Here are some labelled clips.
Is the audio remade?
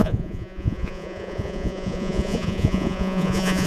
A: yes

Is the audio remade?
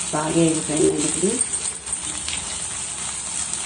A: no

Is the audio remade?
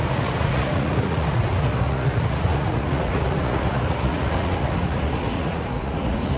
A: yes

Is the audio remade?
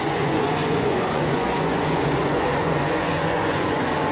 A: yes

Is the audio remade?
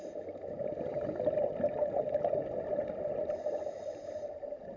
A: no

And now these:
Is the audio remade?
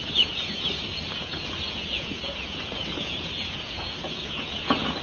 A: yes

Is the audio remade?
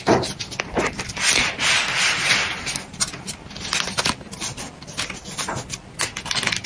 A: no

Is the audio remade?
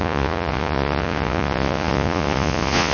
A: yes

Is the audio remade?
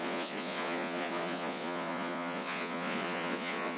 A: yes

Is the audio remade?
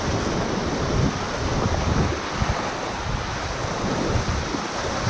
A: no